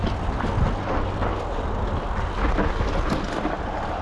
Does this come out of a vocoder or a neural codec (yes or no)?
no